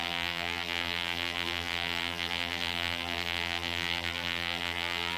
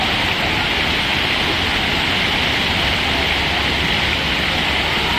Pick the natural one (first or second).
second